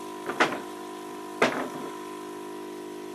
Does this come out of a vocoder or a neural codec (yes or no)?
no